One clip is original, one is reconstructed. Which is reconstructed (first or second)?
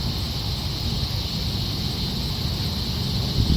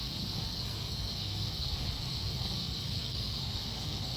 second